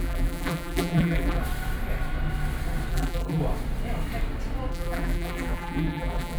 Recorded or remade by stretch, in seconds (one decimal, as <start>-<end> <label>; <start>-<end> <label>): 0.0-1.4 remade; 1.4-2.9 recorded; 2.9-3.4 remade; 3.4-4.7 recorded; 4.7-6.4 remade